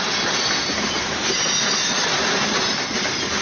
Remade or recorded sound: recorded